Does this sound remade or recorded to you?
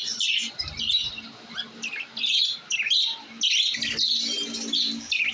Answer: recorded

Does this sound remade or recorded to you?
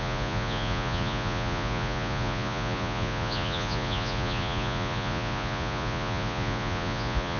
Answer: remade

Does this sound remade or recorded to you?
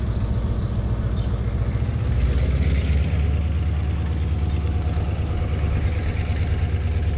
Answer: recorded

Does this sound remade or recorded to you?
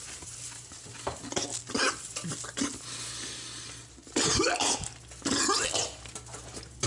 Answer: remade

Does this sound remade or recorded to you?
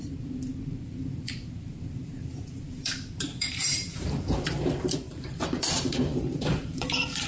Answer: remade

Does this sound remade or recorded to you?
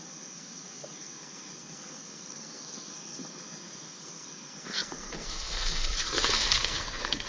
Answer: remade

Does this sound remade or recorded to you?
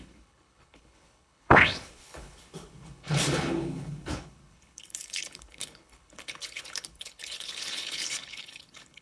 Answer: remade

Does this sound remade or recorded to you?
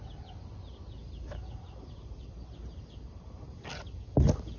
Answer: recorded